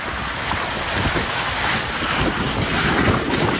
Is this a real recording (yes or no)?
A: yes